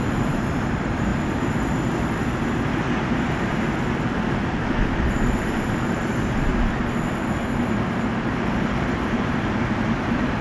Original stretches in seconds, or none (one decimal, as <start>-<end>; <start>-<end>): 1.1-4.0; 6.5-7.3